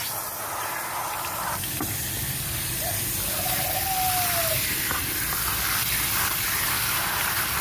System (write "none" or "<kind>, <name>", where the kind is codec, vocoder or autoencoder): none